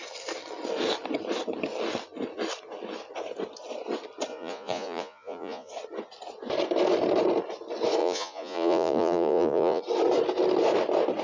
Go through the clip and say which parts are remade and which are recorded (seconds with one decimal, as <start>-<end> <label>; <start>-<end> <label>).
0.0-4.3 recorded; 4.3-5.7 remade; 5.7-8.0 recorded; 8.0-9.8 remade; 9.8-11.2 recorded